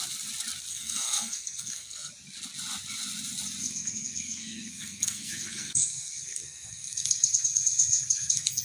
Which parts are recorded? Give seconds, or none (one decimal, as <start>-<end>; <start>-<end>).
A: 0.0-0.7; 2.1-3.6